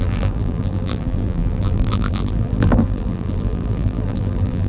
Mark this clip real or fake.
fake